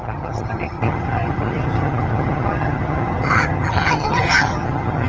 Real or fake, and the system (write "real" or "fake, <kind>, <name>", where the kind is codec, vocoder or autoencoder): fake, vocoder, HiFi-GAN